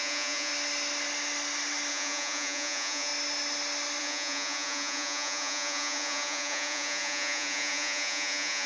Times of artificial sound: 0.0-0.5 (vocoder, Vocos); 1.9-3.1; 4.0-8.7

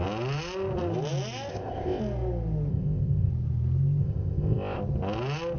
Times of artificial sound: 1.5-2.0 (codec, ZipCodec); 2.7-3.3; 4.0-4.8

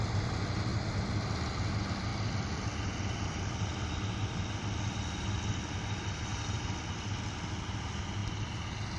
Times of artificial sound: 2.1-2.9 (vocoder, BigVGAN v2)

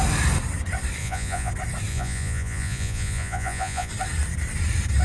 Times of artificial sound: 1.0-1.5 (vocoder, Vocos); 1.9-3.9

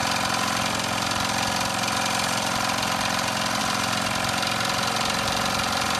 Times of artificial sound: none

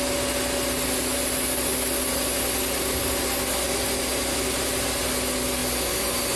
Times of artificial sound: none

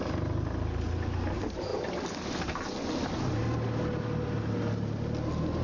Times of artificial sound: none